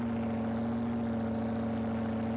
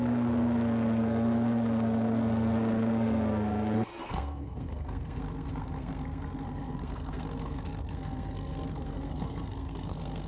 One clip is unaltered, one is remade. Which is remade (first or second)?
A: second